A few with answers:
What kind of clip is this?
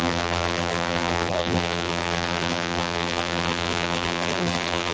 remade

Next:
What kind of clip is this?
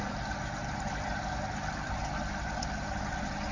recorded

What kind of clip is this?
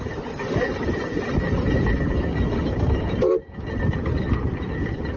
remade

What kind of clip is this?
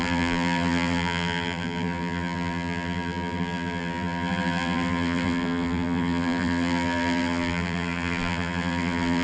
remade